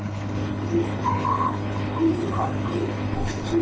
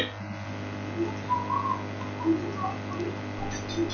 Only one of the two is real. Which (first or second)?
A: second